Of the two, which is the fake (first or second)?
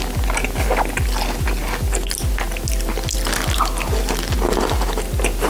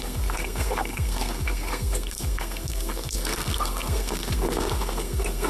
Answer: second